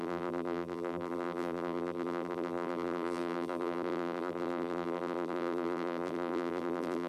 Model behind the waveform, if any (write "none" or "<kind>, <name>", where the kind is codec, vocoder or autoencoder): vocoder, BigVGAN v2